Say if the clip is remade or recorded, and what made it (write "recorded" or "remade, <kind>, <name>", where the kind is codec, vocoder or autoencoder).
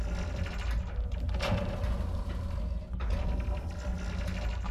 recorded